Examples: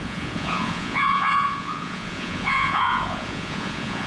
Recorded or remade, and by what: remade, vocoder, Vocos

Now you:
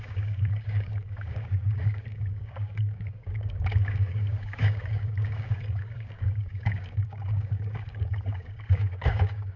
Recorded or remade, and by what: remade, codec, DAC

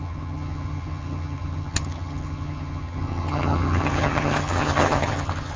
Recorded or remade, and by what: remade, vocoder, HiFi-GAN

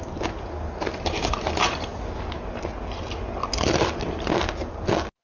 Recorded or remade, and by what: recorded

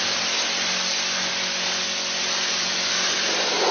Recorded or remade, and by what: recorded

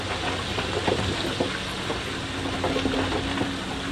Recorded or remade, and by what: recorded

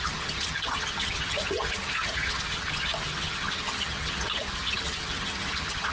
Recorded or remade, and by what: remade, vocoder, HiFi-GAN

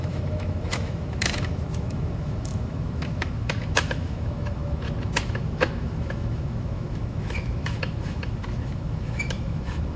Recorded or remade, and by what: remade, autoencoder, DAC-VAE